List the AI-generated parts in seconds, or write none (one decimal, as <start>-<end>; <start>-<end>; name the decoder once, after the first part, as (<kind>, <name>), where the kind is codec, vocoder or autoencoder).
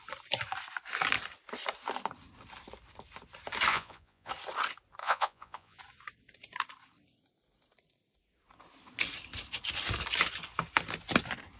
3.7-4.3 (vocoder, Vocos); 5.0-5.8